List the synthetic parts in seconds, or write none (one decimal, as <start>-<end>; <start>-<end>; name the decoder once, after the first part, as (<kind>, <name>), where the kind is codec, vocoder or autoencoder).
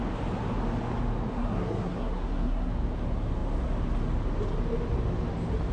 1.3-2.7 (codec, SNAC)